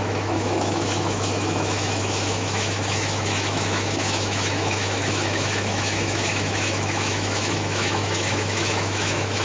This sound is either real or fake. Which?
fake